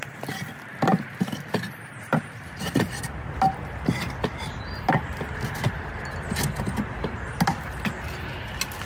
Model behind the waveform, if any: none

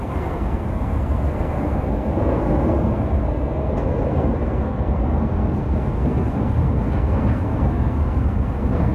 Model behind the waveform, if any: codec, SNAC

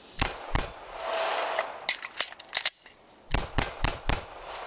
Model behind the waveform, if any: none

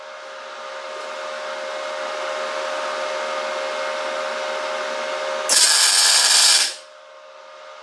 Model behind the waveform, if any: none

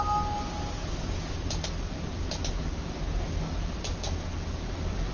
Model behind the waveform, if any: none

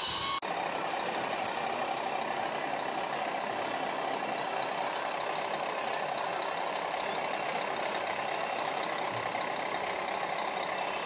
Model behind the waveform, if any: none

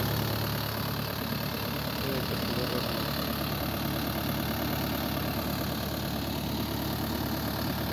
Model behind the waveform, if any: none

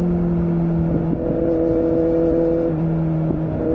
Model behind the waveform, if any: none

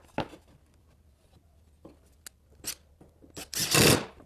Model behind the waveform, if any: none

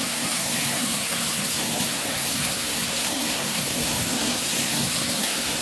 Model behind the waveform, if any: codec, SNAC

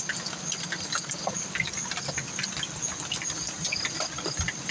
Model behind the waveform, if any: none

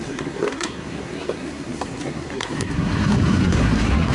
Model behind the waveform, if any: codec, SNAC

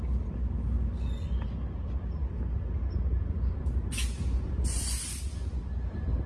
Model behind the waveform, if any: none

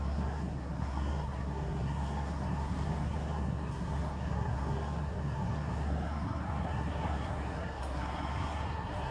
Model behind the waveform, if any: codec, SNAC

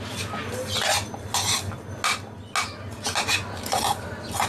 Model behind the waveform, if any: none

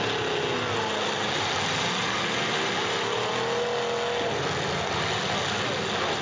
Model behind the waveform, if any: none